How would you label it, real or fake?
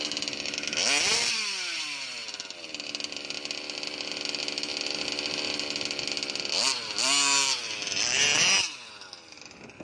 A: real